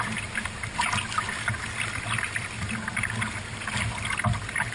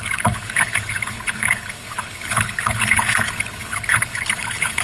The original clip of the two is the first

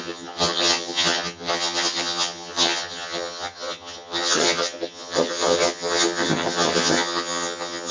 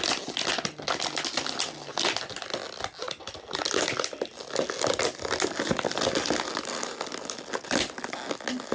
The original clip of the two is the second